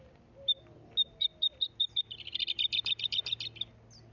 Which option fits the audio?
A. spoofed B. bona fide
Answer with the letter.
B